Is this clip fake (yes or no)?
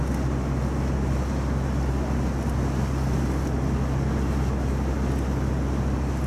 no